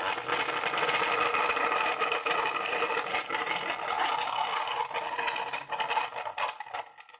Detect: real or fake real